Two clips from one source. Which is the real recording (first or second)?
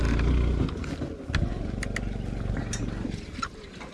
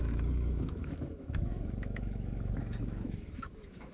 first